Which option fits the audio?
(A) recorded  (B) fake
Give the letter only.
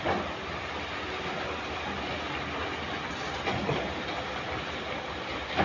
A